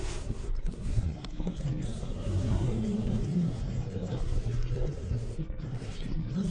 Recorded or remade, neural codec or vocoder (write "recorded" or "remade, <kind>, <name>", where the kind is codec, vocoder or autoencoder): remade, codec, SNAC